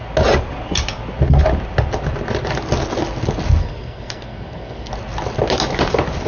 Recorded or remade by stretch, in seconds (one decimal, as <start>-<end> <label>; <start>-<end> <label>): 0.0-3.6 recorded; 3.6-4.9 remade; 4.9-6.3 recorded